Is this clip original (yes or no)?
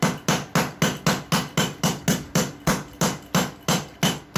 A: yes